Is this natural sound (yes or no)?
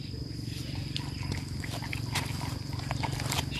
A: yes